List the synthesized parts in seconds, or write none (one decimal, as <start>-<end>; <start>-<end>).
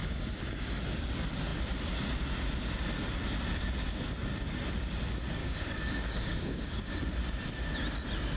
0.0-0.8; 5.4-6.9